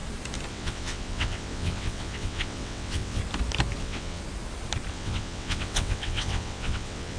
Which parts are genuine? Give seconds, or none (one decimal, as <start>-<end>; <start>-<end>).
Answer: 0.0-0.5; 3.2-3.8; 4.2-4.9